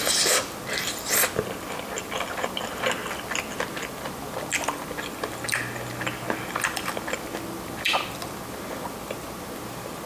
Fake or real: real